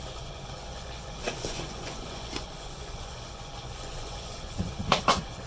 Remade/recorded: remade